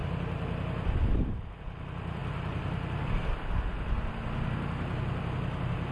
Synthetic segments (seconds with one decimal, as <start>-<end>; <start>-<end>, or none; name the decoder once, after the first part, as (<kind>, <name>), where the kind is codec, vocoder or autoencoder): 1.6-2.2 (vocoder, BigVGAN v2)